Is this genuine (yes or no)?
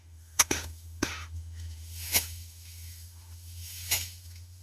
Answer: no